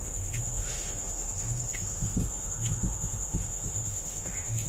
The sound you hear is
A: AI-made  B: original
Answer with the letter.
A